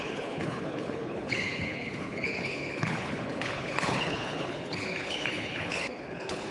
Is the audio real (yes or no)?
no